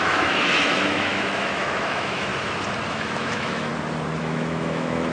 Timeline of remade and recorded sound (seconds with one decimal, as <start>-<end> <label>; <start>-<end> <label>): 0.0-2.3 remade; 2.3-2.9 recorded; 2.9-3.7 remade; 3.7-4.2 recorded; 4.2-5.1 remade